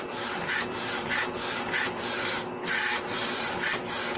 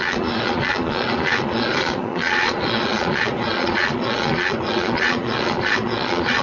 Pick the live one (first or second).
first